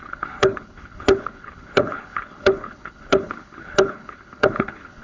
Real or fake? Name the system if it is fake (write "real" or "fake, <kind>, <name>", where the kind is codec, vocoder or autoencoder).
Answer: fake, codec, HILCodec